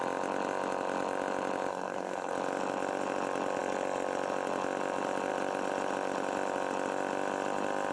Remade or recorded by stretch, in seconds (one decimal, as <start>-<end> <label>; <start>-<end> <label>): 0.0-1.7 recorded; 1.7-2.3 remade; 2.3-7.9 recorded